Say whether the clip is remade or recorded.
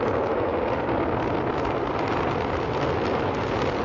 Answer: recorded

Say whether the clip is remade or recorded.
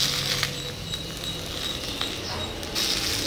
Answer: recorded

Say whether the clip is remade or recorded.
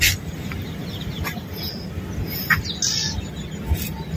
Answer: recorded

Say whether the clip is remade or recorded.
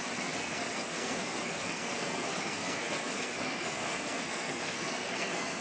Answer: remade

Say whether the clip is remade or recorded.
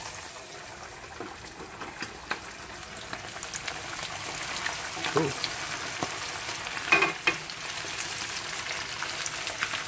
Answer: recorded